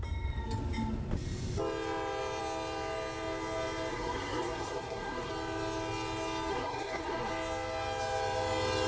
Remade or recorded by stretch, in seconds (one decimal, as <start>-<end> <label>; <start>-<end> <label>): 0.0-3.9 recorded; 3.9-5.3 remade; 5.3-6.5 recorded; 6.5-7.3 remade; 7.3-8.9 recorded

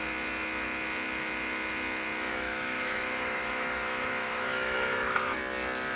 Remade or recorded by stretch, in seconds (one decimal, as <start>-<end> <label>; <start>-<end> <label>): 0.0-2.3 recorded; 2.3-5.4 remade; 5.4-6.0 recorded